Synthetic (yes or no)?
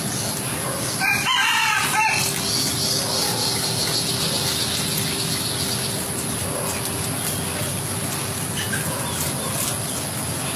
no